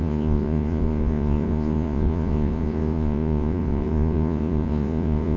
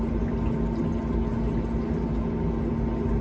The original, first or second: second